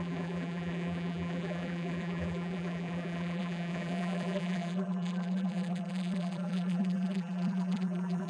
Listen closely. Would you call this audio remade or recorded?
remade